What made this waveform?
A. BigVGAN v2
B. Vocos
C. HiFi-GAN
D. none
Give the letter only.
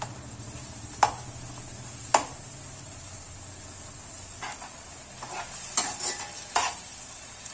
D